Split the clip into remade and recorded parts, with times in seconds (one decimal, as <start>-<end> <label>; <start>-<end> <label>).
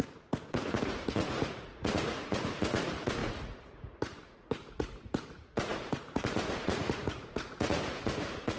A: 0.0-8.6 remade